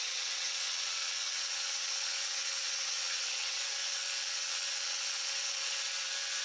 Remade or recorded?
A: remade